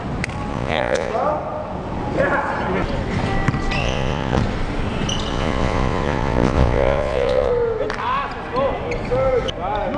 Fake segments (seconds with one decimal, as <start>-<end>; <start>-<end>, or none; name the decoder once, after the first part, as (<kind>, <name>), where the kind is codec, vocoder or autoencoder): 0.5-1.1 (vocoder, Vocos); 3.8-4.4; 5.3-7.5